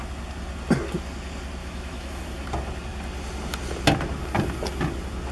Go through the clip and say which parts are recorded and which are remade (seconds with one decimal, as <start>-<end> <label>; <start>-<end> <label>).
0.0-1.6 recorded; 1.6-2.2 remade; 2.2-5.3 recorded